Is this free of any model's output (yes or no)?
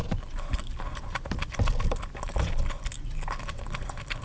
yes